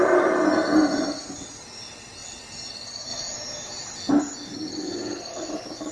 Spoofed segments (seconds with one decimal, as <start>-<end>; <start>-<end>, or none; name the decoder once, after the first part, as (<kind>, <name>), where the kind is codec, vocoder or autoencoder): none